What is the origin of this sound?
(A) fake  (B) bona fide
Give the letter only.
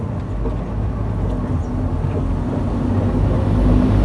B